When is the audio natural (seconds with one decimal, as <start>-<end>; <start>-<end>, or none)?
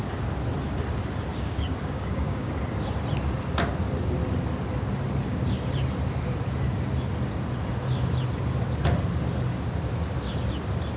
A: 0.0-1.3; 2.5-11.0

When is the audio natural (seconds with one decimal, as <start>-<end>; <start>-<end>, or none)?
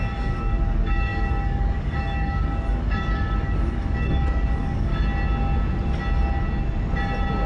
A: 4.9-7.5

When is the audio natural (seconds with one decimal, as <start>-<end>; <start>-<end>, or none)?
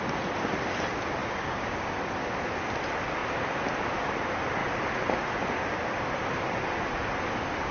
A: 0.0-1.2; 1.9-7.7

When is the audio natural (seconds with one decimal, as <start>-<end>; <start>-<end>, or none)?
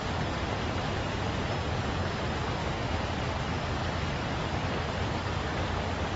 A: 0.0-2.6; 3.2-6.2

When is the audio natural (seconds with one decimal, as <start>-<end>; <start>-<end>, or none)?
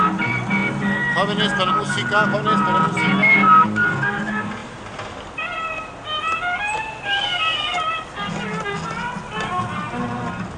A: 0.0-10.6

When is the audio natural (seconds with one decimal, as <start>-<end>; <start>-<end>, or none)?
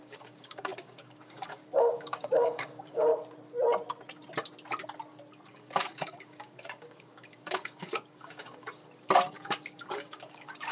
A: 3.1-5.5; 8.8-9.3